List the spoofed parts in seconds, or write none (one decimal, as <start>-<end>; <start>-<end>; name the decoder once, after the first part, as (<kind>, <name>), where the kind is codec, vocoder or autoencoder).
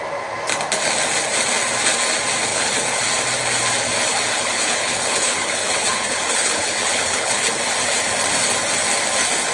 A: 2.5-3.0 (codec, HILCodec); 4.1-7.5